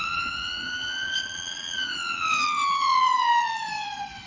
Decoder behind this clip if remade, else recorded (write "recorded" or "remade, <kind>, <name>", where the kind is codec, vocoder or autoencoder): remade, vocoder, WaveNeXt